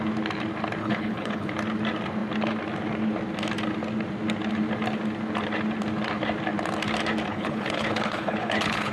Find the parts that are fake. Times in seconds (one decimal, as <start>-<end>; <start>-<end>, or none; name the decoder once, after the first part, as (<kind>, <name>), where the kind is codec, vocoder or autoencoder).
0.8-1.5 (codec, HILCodec); 7.3-8.9